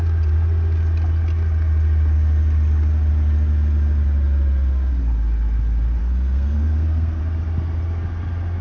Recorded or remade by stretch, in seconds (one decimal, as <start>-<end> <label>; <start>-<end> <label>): 0.0-6.0 recorded; 6.0-7.2 remade; 7.2-8.6 recorded